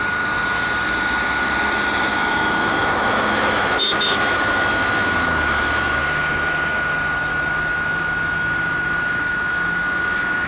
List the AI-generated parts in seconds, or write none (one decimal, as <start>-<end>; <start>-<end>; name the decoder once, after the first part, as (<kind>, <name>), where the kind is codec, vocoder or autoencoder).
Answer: 2.1-6.0 (autoencoder, DAC-VAE); 7.3-10.5